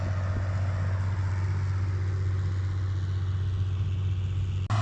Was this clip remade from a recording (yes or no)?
no